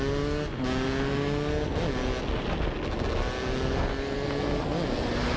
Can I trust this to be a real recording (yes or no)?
yes